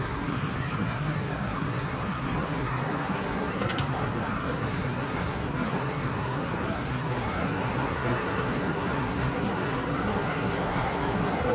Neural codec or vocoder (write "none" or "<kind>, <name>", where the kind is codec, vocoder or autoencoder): codec, SNAC